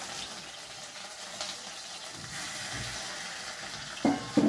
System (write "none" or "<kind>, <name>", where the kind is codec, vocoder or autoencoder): none